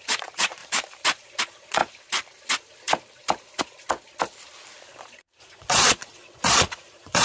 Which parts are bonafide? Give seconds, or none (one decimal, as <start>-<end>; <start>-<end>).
0.6-1.4; 1.8-5.0